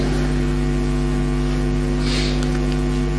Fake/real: real